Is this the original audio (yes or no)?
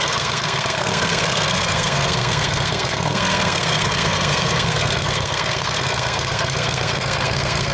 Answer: no